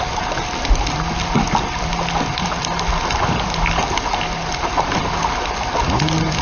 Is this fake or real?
real